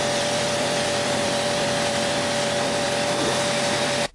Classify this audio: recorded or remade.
remade